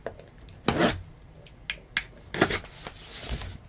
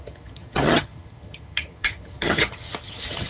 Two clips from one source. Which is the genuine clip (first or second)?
first